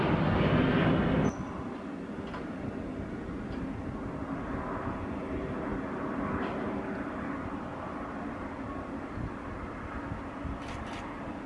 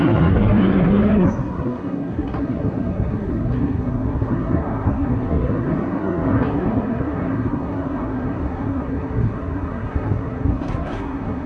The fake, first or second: second